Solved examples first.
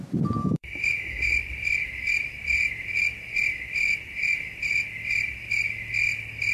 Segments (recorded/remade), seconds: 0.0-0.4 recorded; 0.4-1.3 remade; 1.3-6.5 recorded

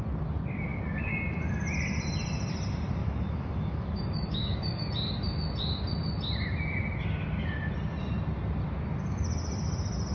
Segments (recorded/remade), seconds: 0.0-3.0 recorded; 3.0-4.9 remade; 4.9-10.1 recorded

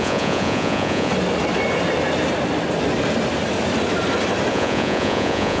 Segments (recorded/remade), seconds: 0.0-1.1 remade; 1.1-4.5 recorded; 4.5-5.6 remade